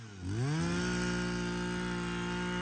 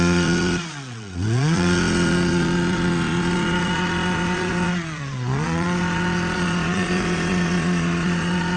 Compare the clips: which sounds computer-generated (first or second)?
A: second